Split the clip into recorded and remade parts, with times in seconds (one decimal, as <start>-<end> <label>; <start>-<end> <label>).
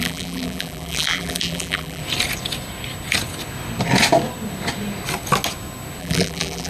0.0-2.0 remade; 2.0-6.0 recorded; 6.0-6.7 remade